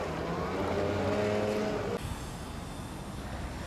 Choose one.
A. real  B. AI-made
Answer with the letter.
A